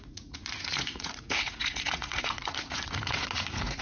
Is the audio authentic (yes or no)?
no